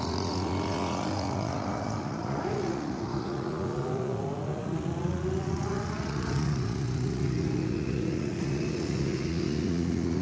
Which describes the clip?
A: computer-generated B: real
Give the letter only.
A